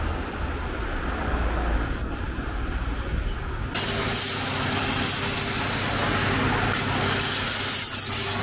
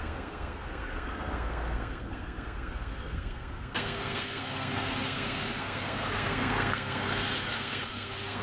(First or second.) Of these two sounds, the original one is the first